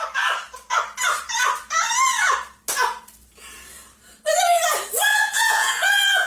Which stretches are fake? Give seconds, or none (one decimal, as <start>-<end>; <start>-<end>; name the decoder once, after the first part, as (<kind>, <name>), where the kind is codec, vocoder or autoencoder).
5.1-6.3 (vocoder, Vocos)